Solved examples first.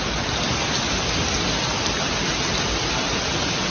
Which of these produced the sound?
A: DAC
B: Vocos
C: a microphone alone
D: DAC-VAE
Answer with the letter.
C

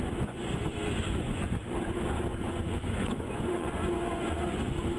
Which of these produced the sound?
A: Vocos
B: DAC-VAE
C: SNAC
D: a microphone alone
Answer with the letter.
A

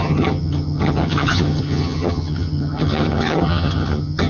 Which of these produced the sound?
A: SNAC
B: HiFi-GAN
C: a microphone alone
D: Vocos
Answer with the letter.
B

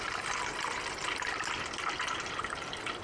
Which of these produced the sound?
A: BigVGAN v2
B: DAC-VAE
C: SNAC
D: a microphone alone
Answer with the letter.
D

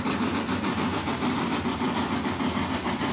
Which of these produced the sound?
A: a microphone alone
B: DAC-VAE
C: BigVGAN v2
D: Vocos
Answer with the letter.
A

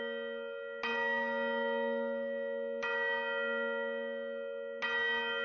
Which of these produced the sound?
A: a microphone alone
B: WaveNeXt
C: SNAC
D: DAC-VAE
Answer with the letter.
A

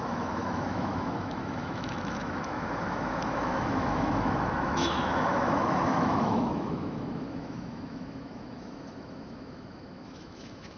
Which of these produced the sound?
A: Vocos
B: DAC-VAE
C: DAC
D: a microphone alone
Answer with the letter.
B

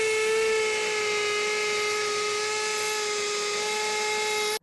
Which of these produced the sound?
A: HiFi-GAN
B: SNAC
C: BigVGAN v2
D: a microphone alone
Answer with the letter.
D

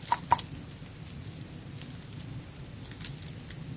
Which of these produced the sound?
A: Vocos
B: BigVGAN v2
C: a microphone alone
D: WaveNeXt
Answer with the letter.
C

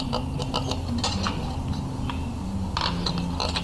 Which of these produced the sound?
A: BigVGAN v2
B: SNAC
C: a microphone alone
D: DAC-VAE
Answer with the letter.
C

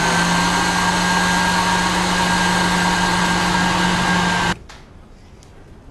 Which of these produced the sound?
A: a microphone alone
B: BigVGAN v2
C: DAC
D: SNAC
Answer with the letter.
A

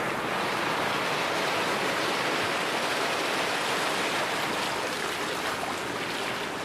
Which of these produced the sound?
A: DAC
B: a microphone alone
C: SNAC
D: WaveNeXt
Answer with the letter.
B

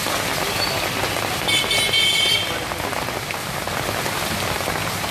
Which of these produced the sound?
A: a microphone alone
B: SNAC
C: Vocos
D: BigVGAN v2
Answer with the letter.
A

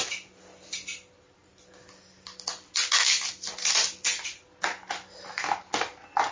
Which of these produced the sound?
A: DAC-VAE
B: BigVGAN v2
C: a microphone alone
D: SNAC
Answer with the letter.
C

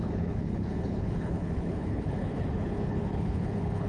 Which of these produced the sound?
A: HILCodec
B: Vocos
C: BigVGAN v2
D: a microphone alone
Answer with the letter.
A